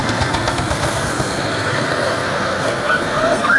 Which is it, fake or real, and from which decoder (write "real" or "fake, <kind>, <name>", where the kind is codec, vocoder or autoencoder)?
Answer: fake, codec, SNAC